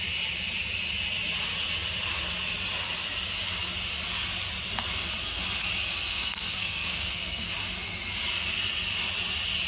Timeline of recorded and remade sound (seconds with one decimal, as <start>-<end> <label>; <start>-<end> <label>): 0.0-6.1 recorded; 6.1-7.5 remade; 7.5-9.7 recorded